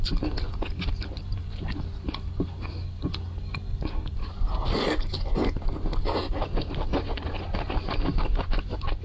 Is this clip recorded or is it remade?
recorded